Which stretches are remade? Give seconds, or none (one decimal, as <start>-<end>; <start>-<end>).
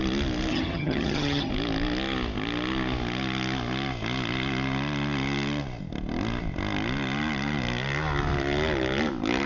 0.5-1.5